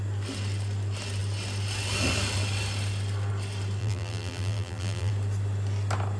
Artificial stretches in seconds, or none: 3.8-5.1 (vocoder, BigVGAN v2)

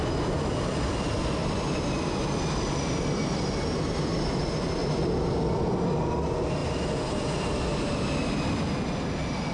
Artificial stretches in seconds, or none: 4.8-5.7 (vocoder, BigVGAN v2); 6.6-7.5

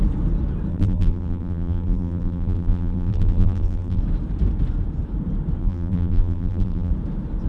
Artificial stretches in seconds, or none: 0.7-4.0 (vocoder, BigVGAN v2); 5.6-6.9

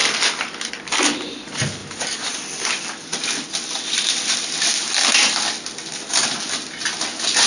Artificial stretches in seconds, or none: none